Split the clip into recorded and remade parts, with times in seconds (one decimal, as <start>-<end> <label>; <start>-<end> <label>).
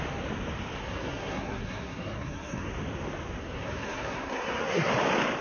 0.0-0.8 recorded; 0.8-2.7 remade; 2.7-3.4 recorded; 3.4-4.9 remade; 4.9-5.4 recorded